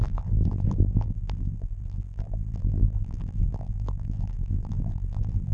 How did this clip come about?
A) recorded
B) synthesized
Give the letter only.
B